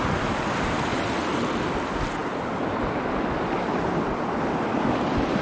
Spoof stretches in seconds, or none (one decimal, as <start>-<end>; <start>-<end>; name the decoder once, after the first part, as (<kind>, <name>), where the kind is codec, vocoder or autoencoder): none